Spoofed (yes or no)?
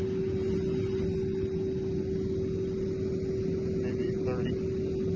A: no